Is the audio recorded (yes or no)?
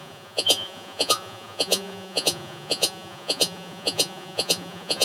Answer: no